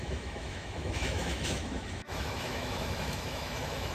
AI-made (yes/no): yes